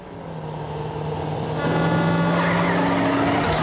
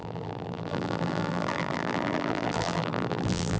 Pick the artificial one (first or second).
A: second